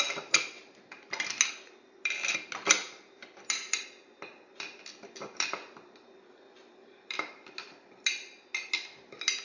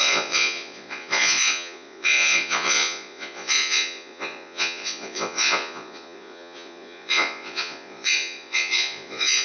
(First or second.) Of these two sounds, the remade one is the second